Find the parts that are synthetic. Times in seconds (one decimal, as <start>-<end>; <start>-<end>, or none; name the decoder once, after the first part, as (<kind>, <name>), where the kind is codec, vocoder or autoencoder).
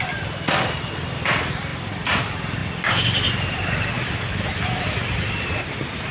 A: none